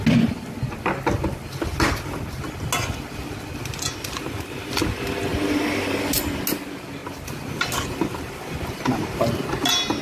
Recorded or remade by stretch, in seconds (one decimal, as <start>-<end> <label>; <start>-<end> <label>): 0.0-10.0 recorded